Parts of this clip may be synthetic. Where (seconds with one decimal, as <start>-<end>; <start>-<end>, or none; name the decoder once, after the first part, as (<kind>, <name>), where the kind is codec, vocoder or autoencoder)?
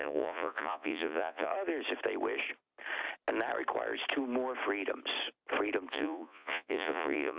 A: 0.0-1.5 (vocoder, Vocos); 5.9-7.4